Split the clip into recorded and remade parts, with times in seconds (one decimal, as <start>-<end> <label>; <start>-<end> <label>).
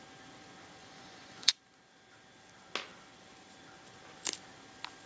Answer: 0.0-0.8 recorded; 0.8-1.6 remade; 1.6-5.1 recorded